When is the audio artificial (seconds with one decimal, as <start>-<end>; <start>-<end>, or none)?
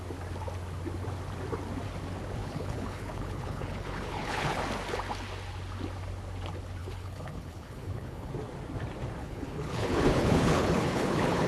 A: 2.4-4.6; 6.8-8.3; 9.2-11.5